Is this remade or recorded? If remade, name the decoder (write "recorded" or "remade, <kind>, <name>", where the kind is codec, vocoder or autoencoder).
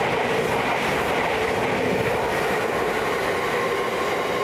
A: recorded